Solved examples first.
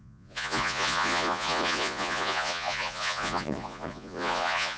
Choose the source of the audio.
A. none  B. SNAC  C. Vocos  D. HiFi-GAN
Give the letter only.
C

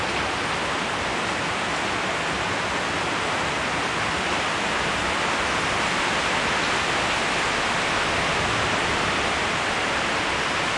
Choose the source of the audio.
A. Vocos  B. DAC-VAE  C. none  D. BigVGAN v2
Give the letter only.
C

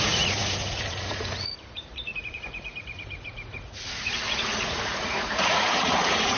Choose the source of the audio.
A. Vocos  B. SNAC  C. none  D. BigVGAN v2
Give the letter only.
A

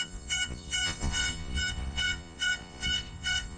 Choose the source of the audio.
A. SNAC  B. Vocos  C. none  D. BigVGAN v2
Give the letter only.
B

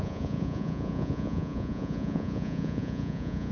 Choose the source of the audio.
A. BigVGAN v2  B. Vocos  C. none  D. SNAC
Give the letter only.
B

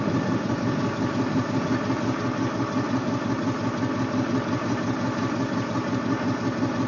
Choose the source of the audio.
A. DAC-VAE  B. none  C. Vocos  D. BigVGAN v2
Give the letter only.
B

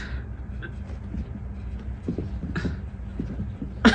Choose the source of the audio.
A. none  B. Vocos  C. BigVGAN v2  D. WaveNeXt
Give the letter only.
A